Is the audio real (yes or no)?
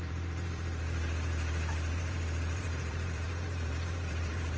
no